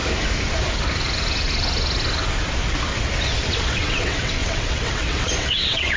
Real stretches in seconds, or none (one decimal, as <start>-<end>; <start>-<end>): 0.0-3.6